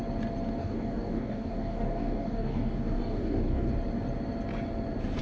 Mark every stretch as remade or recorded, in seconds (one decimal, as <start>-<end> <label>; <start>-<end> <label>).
0.0-0.6 recorded; 0.6-3.7 remade; 3.7-5.2 recorded